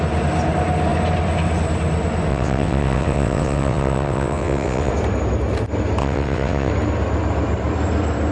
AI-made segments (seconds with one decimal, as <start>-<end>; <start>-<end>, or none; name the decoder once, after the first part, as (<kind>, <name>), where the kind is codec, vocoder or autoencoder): 2.3-4.9 (vocoder, WaveNeXt); 6.0-6.7